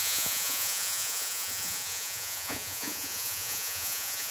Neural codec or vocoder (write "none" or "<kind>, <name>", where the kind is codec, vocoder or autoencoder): vocoder, Vocos